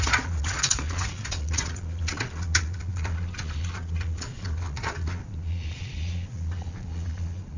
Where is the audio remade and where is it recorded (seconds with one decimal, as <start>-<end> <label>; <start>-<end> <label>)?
0.0-7.6 remade